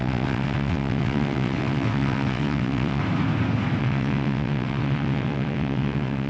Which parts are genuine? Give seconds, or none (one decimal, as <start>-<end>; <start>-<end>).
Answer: 3.0-3.8